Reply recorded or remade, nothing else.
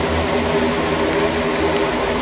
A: recorded